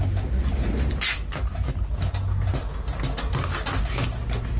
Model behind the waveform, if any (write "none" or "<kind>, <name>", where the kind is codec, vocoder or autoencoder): none